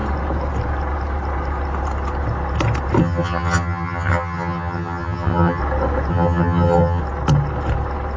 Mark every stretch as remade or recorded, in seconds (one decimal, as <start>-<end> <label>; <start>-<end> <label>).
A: 0.0-3.0 recorded; 3.0-5.6 remade; 5.6-6.1 recorded; 6.1-7.0 remade; 7.0-8.2 recorded